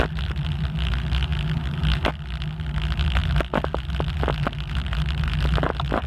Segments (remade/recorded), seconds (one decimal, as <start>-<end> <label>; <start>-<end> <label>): 0.0-6.1 recorded